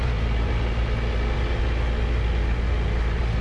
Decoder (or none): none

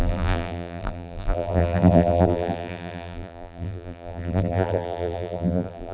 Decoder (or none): vocoder, BigVGAN v2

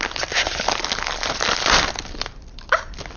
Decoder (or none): vocoder, BigVGAN v2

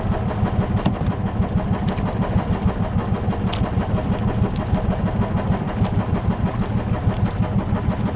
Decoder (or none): none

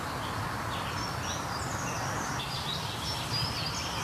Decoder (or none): none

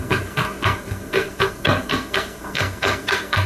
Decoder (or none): codec, SNAC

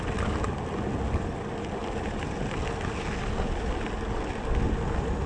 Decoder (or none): none